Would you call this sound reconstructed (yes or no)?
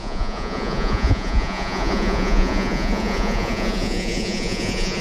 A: yes